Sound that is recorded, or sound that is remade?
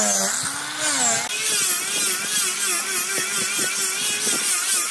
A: recorded